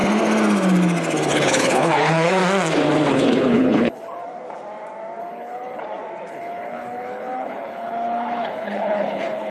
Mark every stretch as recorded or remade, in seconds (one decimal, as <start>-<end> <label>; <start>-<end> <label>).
0.0-1.3 recorded; 1.3-2.4 remade; 2.4-3.1 recorded; 3.1-4.2 remade; 4.2-5.2 recorded; 5.2-5.8 remade; 5.8-6.3 recorded; 6.3-9.5 remade